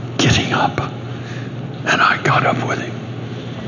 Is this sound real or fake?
real